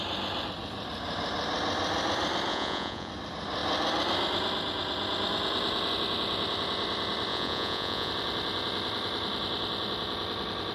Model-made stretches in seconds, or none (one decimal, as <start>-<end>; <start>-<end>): 2.5-3.1; 7.3-8.1